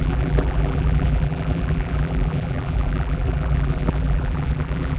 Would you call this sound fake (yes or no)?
yes